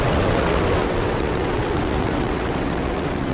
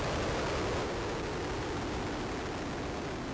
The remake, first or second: first